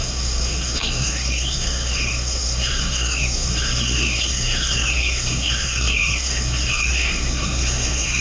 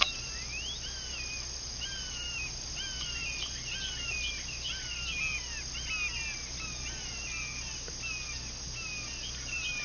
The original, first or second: second